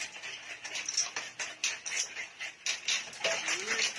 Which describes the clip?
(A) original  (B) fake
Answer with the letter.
A